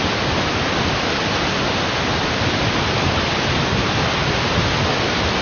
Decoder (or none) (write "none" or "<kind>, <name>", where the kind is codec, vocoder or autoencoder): none